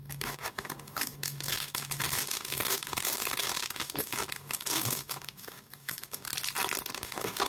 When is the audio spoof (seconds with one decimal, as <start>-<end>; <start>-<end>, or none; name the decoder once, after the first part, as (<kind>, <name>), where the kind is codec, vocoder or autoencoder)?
0.0-6.3 (codec, DAC); 6.9-7.5

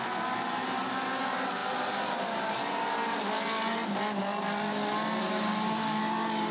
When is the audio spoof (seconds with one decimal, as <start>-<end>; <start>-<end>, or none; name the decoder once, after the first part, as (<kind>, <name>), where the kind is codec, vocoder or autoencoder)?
5.3-6.0 (codec, DAC)

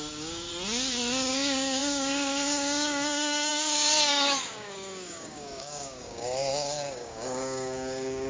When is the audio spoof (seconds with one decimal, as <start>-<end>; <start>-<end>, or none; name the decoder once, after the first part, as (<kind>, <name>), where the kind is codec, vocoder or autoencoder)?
0.0-0.5 (codec, DAC); 1.3-8.3

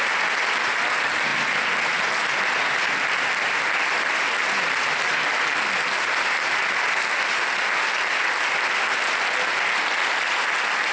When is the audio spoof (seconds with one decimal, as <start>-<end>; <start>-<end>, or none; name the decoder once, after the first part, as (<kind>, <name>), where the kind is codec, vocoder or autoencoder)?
none

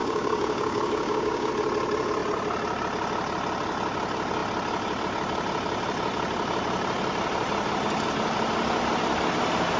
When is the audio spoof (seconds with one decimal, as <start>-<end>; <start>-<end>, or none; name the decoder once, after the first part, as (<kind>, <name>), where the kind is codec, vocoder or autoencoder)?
0.0-1.5 (codec, DAC)

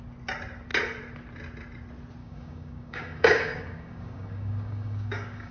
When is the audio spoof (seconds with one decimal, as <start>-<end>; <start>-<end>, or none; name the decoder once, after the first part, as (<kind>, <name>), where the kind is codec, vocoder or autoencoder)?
2.2-5.5 (codec, DAC)